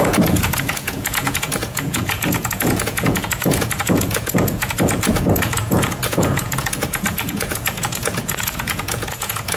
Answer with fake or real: fake